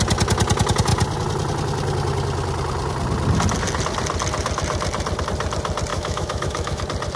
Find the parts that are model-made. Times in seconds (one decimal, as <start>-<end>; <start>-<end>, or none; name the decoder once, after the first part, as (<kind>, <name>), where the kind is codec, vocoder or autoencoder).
5.9-6.8 (autoencoder, DAC-VAE)